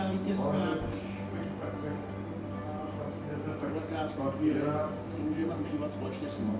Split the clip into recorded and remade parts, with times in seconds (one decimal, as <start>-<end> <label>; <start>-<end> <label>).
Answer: 0.0-6.6 recorded